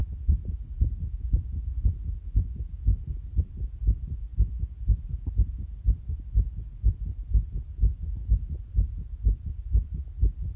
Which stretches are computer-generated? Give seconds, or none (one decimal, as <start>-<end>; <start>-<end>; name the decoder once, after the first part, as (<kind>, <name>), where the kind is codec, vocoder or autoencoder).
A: none